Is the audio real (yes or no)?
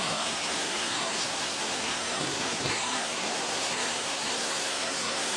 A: no